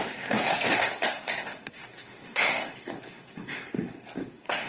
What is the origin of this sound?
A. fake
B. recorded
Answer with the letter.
A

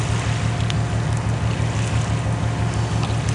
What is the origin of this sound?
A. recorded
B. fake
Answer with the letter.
A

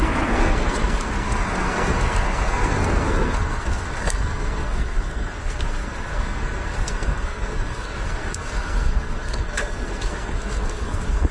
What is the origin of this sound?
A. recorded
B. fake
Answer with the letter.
B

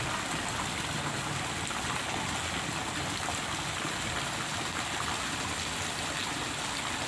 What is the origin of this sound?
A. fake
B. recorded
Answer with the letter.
B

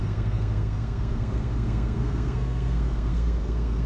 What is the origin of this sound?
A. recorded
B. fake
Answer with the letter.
B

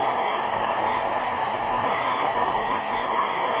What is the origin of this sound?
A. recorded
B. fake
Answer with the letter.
B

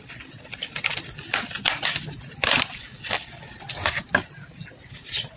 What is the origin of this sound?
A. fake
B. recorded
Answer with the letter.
B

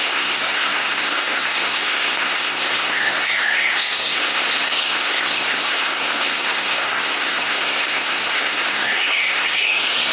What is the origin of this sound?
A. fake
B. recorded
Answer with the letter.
A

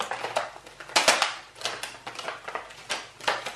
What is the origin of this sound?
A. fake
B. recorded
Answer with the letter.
B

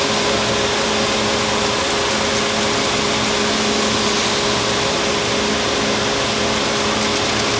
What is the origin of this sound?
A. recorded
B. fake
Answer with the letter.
A